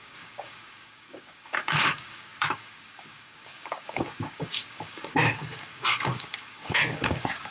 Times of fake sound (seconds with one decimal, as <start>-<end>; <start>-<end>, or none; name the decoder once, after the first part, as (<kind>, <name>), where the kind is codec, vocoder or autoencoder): 0.0-7.5 (codec, DAC)